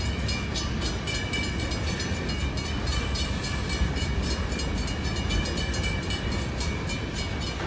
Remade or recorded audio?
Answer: recorded